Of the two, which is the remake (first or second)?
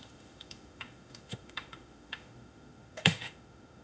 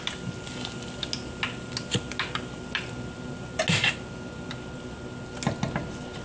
first